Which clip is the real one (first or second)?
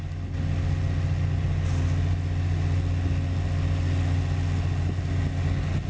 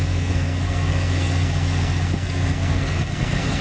first